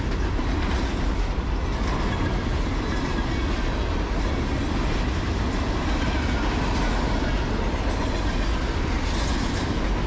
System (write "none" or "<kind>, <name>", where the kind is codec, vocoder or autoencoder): none